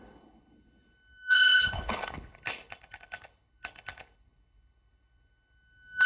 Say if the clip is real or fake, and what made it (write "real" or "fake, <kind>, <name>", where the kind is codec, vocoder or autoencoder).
fake, codec, HILCodec